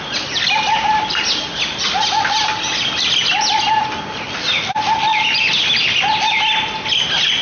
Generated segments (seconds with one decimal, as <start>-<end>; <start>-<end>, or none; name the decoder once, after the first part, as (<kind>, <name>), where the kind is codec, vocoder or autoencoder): none